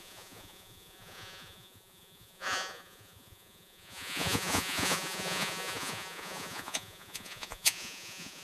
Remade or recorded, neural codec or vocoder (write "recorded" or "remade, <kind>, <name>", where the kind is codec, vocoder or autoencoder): remade, vocoder, Vocos